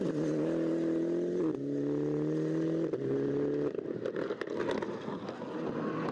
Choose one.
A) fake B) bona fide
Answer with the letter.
B